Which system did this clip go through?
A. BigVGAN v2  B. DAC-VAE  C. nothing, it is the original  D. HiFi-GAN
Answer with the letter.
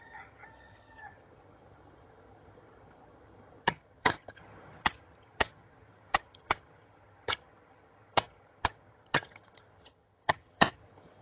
D